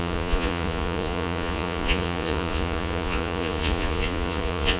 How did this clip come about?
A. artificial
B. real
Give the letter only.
A